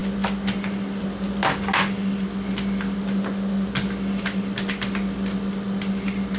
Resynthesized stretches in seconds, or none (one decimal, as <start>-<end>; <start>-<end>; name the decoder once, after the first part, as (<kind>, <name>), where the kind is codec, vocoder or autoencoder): none

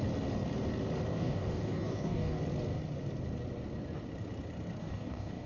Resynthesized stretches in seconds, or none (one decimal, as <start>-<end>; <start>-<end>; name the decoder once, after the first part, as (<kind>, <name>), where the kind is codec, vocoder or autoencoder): 1.1-2.4 (codec, DAC); 4.8-5.5

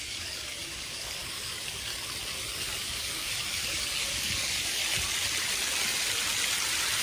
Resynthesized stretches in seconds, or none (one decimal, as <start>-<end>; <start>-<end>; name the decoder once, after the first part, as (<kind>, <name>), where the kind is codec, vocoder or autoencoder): 0.0-1.9 (codec, DAC); 2.6-4.8

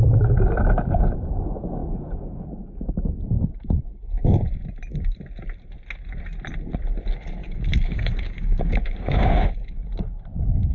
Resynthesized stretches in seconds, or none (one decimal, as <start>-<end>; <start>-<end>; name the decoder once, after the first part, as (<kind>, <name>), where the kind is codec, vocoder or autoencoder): 1.8-3.2 (codec, DAC); 7.4-10.1

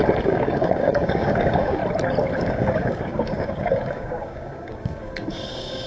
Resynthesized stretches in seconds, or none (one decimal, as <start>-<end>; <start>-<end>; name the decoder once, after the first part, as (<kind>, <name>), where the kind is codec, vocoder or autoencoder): 0.0-1.8 (codec, DAC); 2.4-5.9

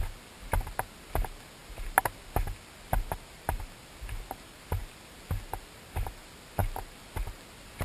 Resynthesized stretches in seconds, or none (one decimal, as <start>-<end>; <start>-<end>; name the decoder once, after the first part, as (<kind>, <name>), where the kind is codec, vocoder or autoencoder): none

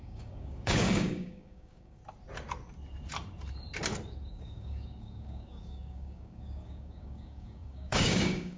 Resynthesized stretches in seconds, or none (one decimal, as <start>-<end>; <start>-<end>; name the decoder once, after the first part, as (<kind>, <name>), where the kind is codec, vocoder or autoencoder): 0.0-2.0 (codec, DAC); 4.2-8.6

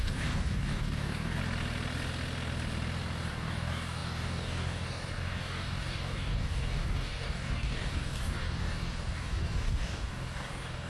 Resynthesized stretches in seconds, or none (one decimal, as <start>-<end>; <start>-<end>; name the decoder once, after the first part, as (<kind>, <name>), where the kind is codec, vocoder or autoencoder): 0.0-1.4 (codec, DAC); 3.3-10.9